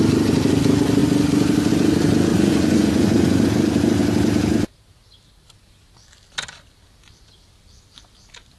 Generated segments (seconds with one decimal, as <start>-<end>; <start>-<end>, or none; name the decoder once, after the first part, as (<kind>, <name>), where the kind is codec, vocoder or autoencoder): 2.3-3.5 (vocoder, Vocos)